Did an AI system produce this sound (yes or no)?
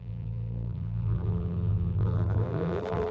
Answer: yes